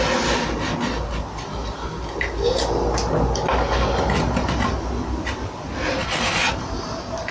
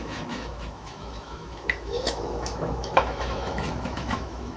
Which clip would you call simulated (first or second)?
second